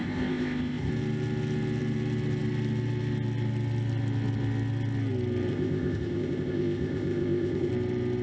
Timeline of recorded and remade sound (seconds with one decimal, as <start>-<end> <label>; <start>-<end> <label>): 0.0-0.9 remade; 0.9-5.5 recorded; 5.5-7.7 remade; 7.7-8.2 recorded